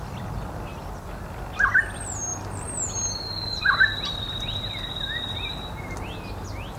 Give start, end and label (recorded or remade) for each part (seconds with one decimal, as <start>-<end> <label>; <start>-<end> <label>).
0.0-6.8 recorded